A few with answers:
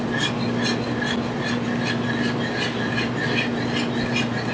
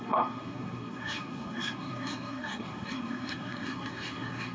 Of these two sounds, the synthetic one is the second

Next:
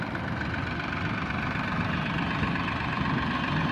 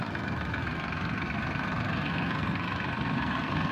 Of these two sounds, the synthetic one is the second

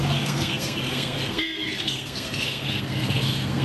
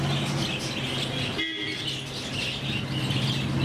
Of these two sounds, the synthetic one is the first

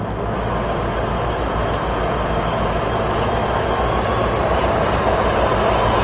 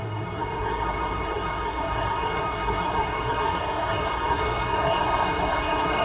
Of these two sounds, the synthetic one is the second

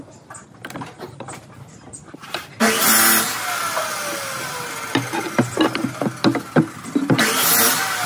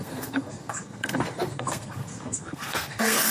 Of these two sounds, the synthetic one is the second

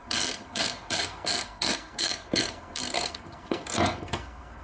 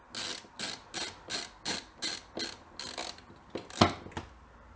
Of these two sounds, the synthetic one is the first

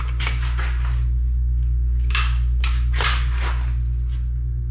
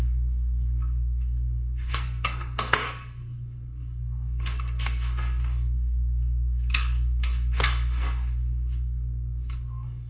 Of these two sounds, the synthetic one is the second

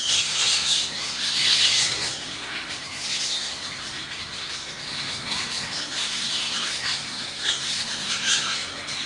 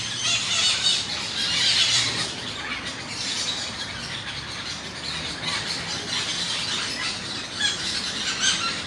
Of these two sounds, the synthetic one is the first